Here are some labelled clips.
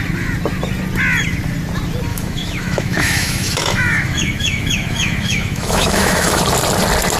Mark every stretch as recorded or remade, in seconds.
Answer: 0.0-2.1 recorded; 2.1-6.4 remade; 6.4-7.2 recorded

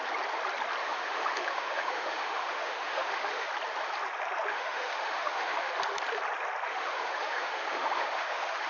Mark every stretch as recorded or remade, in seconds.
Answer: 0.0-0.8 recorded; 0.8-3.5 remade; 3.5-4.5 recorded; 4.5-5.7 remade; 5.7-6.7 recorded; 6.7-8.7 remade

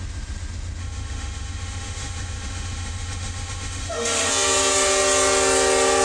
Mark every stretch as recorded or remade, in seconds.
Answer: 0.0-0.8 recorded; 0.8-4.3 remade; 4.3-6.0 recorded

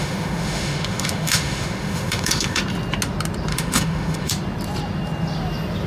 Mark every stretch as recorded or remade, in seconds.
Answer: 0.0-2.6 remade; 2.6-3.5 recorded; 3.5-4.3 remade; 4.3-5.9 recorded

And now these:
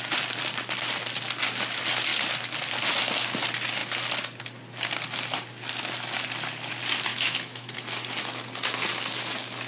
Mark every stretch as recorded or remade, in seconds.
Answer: 0.0-7.1 recorded; 7.1-7.7 remade; 7.7-9.7 recorded

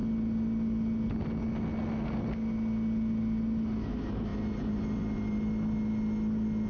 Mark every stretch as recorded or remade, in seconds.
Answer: 0.0-6.7 recorded

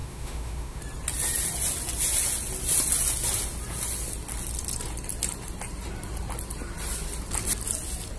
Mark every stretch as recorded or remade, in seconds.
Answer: 0.0-0.8 remade; 0.8-8.2 recorded

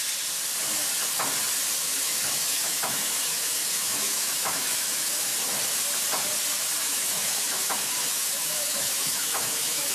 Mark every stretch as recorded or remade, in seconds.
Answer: 0.0-1.8 recorded; 1.8-5.3 remade; 5.3-6.8 recorded; 6.8-9.9 remade